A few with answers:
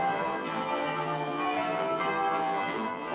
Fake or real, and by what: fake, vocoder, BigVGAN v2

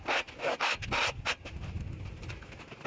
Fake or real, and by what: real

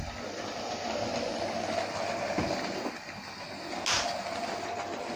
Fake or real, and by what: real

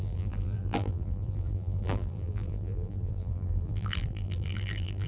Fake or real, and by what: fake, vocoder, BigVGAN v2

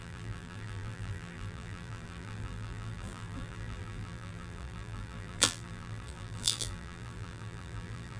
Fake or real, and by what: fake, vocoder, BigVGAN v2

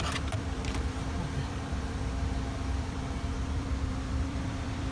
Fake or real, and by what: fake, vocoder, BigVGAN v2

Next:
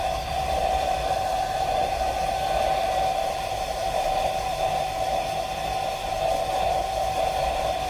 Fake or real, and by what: fake, vocoder, BigVGAN v2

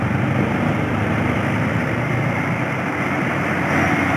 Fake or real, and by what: fake, vocoder, BigVGAN v2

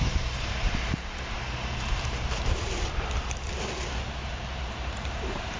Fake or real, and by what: fake, vocoder, BigVGAN v2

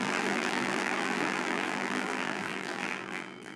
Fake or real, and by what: fake, vocoder, BigVGAN v2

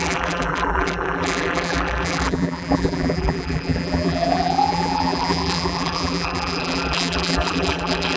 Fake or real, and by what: fake, vocoder, BigVGAN v2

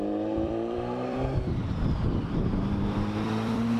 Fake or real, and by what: fake, vocoder, BigVGAN v2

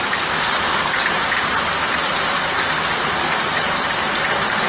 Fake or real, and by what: real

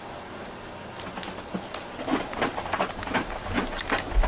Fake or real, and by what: real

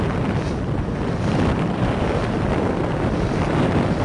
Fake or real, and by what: fake, vocoder, BigVGAN v2